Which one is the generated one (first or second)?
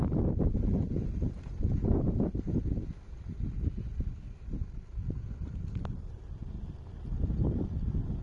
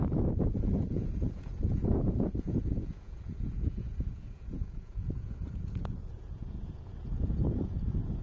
second